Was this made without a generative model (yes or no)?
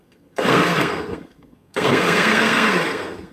no